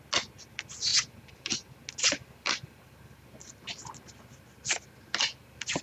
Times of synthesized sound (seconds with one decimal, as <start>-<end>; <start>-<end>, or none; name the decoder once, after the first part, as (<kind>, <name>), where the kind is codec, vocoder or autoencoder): none